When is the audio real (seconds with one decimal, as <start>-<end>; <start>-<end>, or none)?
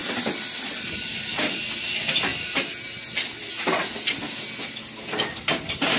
1.4-6.0